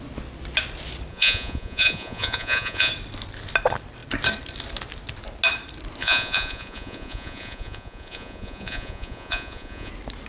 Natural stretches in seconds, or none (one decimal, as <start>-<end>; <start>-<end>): 0.0-1.1; 2.9-6.0; 9.9-10.3